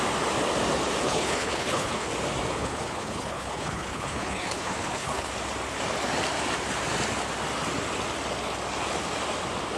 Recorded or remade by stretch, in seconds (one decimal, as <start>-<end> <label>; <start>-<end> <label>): 0.0-1.0 recorded; 1.0-2.1 remade; 2.1-2.6 recorded; 2.6-5.3 remade; 5.3-9.8 recorded